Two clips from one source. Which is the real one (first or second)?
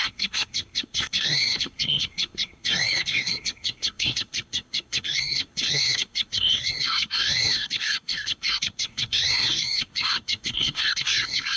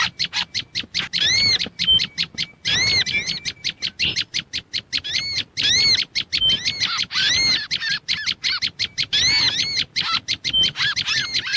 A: second